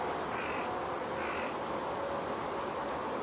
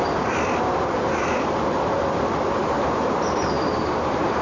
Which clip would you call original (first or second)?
first